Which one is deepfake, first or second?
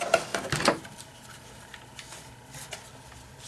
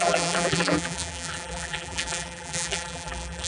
second